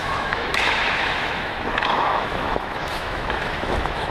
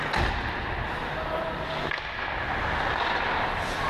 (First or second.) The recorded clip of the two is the second